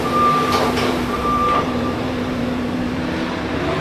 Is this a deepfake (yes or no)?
yes